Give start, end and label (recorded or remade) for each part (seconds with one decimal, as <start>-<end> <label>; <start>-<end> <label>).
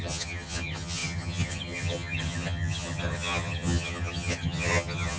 0.0-5.2 remade